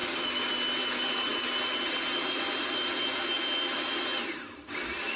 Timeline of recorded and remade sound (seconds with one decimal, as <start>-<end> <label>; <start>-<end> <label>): 0.0-5.2 recorded